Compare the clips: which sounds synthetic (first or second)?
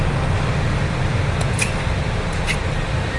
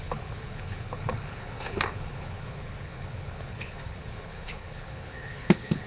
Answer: second